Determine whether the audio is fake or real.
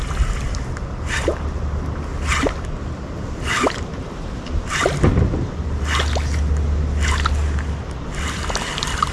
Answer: real